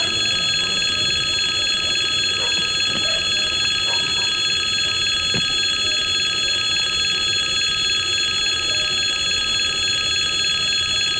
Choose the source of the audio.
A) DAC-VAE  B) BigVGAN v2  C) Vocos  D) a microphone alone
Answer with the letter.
D